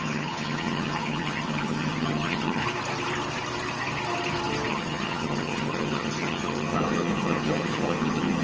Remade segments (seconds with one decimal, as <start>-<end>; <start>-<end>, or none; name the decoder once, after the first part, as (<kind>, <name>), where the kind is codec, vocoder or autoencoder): 0.0-2.6 (vocoder, HiFi-GAN); 4.7-8.4